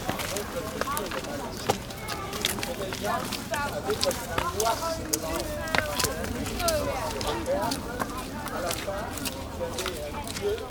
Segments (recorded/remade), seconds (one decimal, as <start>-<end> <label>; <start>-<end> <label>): 0.0-8.5 recorded; 8.5-9.8 remade; 9.8-10.7 recorded